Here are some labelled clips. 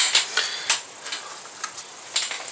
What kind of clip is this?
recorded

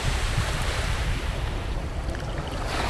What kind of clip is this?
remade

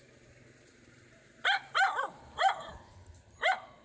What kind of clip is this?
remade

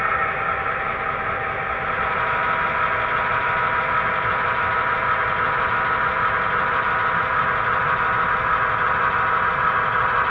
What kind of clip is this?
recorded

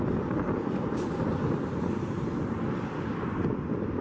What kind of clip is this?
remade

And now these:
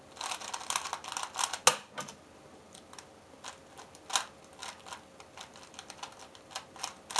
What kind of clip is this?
recorded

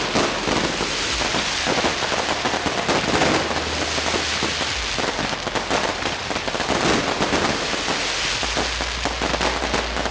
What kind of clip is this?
recorded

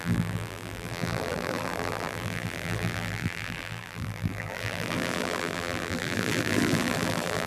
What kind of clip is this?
remade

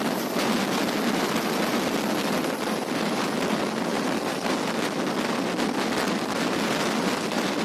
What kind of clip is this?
recorded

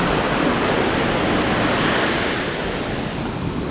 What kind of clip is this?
recorded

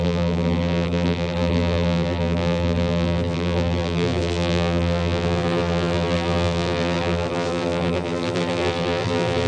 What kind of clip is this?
remade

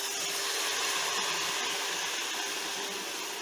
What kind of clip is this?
recorded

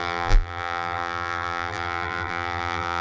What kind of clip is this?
remade